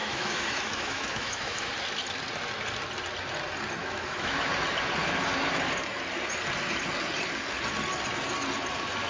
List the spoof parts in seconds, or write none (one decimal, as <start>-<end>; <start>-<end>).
0.0-1.7; 3.8-4.5